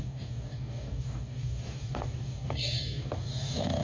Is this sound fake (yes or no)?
yes